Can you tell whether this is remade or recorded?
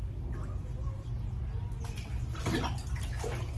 recorded